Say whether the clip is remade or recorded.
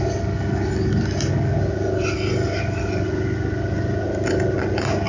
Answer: recorded